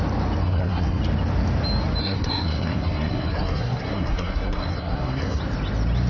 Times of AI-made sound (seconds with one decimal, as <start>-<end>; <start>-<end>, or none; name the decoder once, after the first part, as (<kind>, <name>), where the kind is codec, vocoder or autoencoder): 0.4-1.0 (codec, SNAC); 2.0-5.4